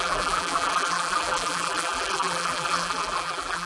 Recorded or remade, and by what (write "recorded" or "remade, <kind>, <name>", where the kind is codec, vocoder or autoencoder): remade, vocoder, BigVGAN v2